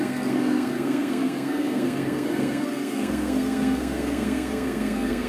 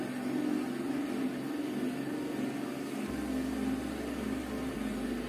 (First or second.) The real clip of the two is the second